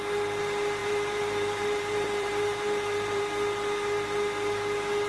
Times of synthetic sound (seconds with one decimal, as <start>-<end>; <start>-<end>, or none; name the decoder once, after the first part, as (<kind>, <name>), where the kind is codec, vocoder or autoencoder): 0.8-3.2 (vocoder, BigVGAN v2)